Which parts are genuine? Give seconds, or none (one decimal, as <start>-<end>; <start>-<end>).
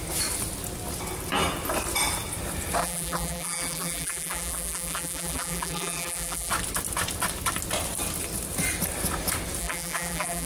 0.0-2.8; 6.5-9.6